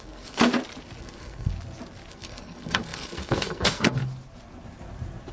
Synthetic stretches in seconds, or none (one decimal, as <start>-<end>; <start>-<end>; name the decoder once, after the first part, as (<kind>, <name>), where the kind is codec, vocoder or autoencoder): 0.0-0.5 (codec, SNAC); 1.0-1.5; 2.1-4.0